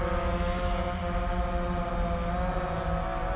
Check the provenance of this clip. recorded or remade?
recorded